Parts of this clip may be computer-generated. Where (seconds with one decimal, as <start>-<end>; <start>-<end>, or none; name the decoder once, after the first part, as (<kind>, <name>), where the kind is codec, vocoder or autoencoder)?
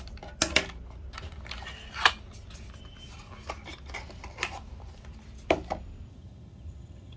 6.1-7.2 (vocoder, HiFi-GAN)